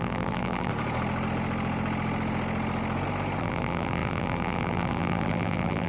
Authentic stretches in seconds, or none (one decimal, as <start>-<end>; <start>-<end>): 0.7-3.4